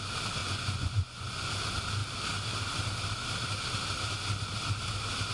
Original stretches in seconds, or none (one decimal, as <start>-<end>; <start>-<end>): 0.0-0.4; 1.5-5.3